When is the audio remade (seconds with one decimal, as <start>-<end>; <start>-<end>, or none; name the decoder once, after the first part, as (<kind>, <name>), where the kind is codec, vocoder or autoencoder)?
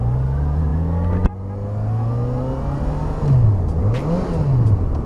none